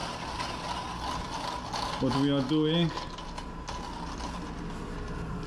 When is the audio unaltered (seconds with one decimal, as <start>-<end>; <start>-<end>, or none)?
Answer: 0.6-5.5